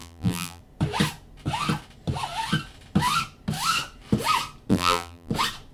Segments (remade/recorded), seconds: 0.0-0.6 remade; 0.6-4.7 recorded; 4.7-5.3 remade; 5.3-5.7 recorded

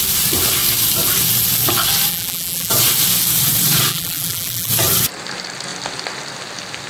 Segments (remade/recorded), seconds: 0.0-2.1 recorded; 2.1-2.7 remade; 2.7-3.9 recorded; 3.9-4.7 remade; 4.7-6.9 recorded